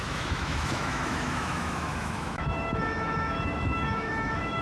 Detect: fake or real fake